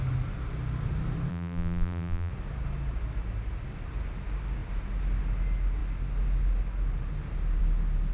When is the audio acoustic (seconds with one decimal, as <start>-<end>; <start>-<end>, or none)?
0.0-1.3; 2.3-8.1